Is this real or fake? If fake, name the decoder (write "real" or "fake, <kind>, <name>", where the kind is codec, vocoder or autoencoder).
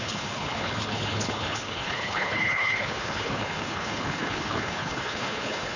fake, codec, HILCodec